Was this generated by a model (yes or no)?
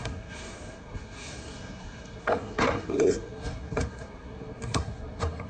yes